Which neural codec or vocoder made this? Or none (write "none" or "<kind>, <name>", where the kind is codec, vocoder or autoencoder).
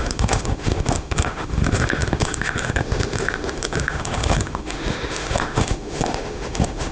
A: autoencoder, DAC-VAE